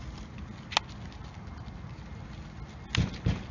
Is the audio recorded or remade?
recorded